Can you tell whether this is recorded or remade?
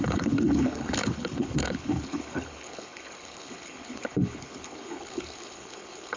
remade